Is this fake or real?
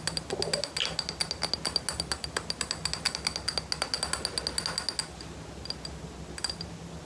real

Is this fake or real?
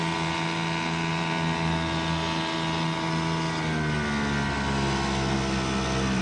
real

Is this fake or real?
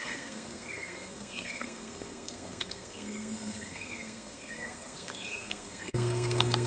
fake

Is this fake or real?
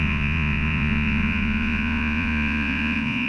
fake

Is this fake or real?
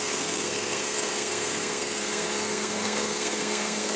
fake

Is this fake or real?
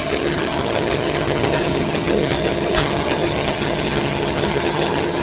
fake